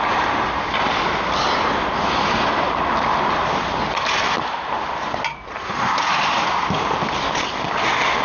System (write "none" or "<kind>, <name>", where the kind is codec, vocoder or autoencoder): none